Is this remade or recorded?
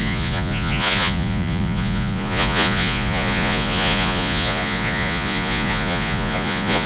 remade